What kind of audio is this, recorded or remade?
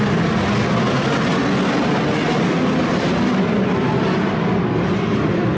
recorded